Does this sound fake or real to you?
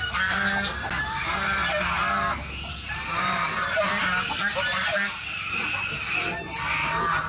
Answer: real